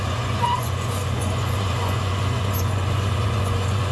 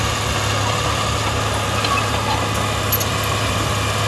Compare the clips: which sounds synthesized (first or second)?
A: first